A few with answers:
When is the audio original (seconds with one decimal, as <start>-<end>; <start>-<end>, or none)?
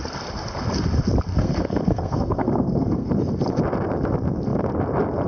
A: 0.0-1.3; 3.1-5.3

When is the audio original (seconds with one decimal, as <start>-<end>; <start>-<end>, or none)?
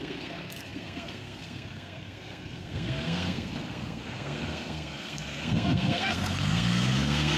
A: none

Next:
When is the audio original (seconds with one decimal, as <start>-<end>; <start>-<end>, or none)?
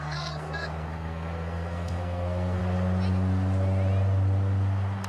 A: 2.6-5.1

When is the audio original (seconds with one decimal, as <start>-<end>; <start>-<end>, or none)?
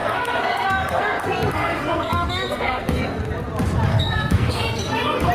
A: 3.2-3.9